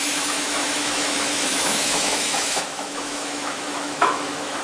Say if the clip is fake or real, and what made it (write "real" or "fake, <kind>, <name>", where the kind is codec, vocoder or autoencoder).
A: fake, autoencoder, DAC-VAE